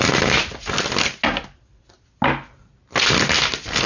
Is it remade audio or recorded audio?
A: recorded